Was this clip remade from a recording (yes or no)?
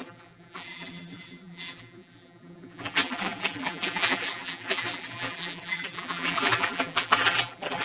yes